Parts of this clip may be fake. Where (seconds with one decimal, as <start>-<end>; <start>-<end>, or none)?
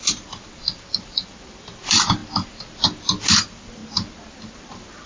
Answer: 0.0-2.2; 3.2-3.8; 4.3-5.1